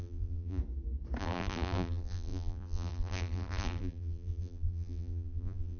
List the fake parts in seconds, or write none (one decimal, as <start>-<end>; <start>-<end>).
0.0-0.6; 1.2-5.8